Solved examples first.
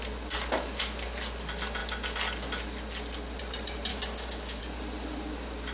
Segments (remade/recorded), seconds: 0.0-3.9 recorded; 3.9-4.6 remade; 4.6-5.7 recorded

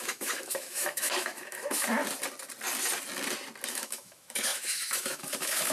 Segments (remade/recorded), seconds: 0.0-2.0 remade; 2.0-3.7 recorded; 3.7-5.7 remade